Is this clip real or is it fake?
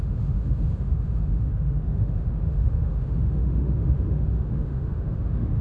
fake